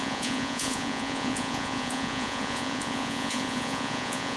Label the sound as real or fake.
fake